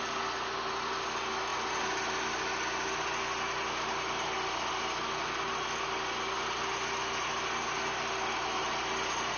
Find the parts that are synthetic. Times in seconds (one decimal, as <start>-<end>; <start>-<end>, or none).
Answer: none